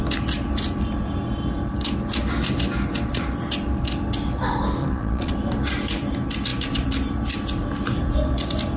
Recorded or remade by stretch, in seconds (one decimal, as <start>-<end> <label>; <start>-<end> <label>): 0.0-4.8 recorded; 4.8-5.3 remade; 5.3-8.8 recorded